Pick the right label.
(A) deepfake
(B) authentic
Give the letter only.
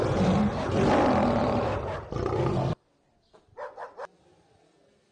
B